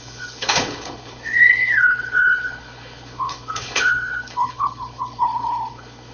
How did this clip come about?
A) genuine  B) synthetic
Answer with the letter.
B